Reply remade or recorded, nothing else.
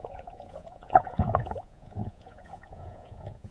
remade